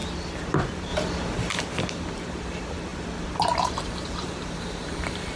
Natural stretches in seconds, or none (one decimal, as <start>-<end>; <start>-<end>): 0.0-0.5; 0.9-1.5